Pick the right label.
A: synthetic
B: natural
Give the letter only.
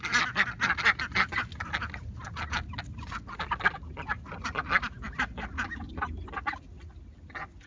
B